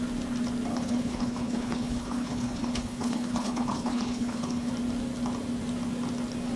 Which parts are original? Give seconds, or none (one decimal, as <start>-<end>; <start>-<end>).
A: 0.0-0.7; 4.7-6.6